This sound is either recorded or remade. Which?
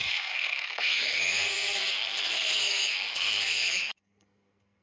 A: remade